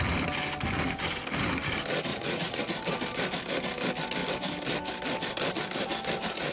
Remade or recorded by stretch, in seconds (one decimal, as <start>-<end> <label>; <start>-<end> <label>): 0.0-2.1 recorded; 2.1-2.6 remade; 2.6-6.5 recorded